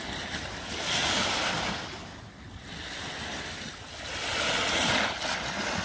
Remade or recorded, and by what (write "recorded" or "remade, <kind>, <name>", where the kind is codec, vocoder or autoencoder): recorded